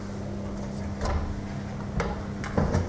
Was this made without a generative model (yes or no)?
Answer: yes